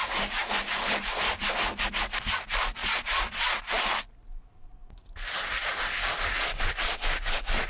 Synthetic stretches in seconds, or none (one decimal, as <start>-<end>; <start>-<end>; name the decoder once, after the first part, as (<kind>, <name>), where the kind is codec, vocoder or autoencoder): 2.8-3.6 (vocoder, Vocos)